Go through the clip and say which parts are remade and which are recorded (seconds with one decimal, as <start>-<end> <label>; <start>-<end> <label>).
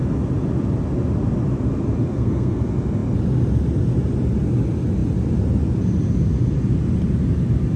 0.0-2.1 recorded; 2.1-2.6 remade; 2.6-7.8 recorded